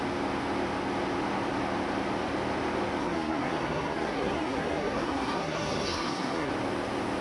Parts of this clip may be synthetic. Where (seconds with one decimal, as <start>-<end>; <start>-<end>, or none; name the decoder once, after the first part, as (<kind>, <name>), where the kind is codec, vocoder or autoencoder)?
3.0-6.5 (codec, SNAC)

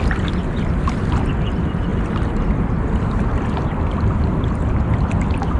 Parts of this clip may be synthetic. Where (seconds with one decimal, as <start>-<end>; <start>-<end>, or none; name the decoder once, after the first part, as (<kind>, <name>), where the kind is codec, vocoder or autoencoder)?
none

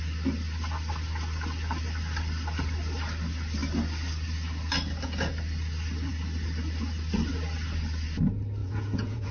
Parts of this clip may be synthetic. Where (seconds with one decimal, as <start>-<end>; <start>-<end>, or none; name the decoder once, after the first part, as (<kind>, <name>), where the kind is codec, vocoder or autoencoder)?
8.6-9.3 (vocoder, Vocos)

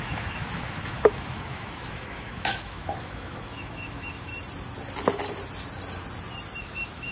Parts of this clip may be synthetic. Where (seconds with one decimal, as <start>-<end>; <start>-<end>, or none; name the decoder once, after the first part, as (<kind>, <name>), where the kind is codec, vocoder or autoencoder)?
0.0-4.3 (autoencoder, DAC-VAE); 6.6-7.1

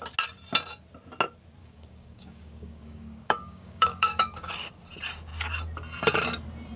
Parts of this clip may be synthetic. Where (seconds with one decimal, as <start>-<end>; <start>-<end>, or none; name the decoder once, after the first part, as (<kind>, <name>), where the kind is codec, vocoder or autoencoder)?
1.6-4.7 (codec, DAC)

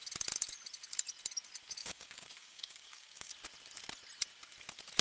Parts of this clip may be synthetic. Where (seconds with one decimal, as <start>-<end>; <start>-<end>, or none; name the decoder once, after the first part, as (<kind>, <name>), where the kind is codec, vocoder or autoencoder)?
1.8-3.3 (codec, DAC)

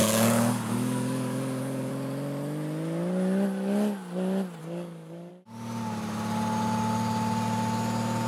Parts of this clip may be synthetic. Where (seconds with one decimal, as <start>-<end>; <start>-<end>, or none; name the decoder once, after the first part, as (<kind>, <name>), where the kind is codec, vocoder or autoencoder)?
0.0-1.9 (codec, DAC); 4.6-5.3

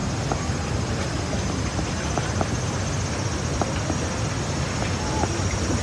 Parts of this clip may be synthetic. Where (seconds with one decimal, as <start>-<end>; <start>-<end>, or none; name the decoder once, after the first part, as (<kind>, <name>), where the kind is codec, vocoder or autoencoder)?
none